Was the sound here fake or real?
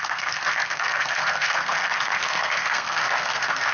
fake